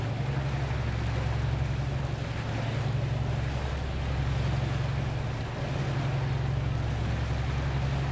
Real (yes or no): yes